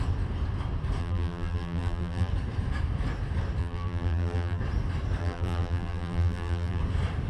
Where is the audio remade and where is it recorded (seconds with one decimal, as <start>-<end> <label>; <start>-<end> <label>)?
0.0-1.0 recorded; 1.0-2.3 remade; 2.3-3.6 recorded; 3.6-4.6 remade; 4.6-5.2 recorded; 5.2-6.8 remade; 6.8-7.3 recorded